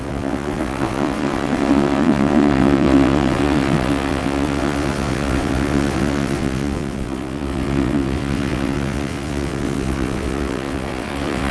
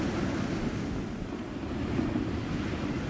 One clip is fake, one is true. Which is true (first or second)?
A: second